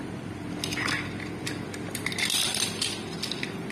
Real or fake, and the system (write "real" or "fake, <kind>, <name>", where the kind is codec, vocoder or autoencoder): fake, vocoder, BigVGAN v2